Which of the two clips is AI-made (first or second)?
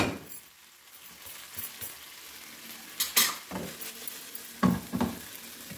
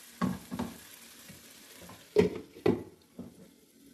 second